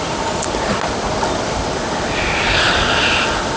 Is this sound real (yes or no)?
yes